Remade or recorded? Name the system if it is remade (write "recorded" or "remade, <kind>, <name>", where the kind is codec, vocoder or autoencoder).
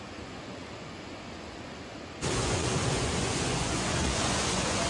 remade, vocoder, Vocos